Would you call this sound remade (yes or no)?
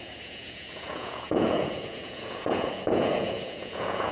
yes